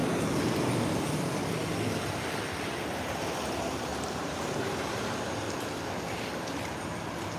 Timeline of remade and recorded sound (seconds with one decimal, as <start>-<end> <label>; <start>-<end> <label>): 0.0-3.9 recorded; 3.9-5.3 remade; 5.3-7.4 recorded